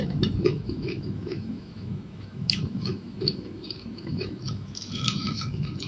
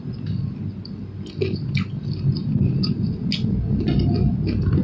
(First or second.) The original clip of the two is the second